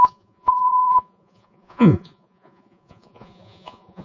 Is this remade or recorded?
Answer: remade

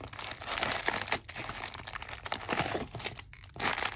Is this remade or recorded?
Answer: recorded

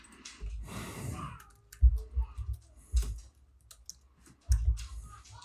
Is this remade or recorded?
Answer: recorded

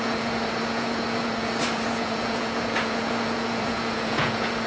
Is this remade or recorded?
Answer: remade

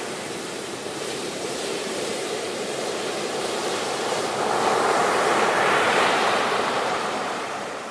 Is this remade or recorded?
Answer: remade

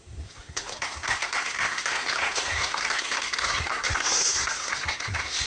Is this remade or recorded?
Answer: remade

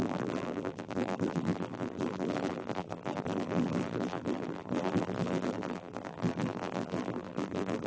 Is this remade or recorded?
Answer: remade